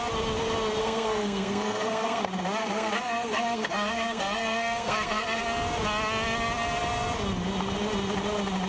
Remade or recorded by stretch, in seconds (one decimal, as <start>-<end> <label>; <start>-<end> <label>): 0.0-0.8 recorded; 0.8-2.2 remade; 2.2-2.6 recorded; 2.6-5.4 remade; 5.4-8.7 recorded